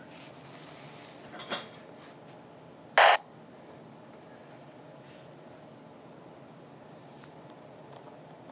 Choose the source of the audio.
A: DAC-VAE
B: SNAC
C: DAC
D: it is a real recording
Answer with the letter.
D